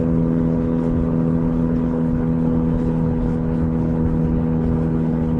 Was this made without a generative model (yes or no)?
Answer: no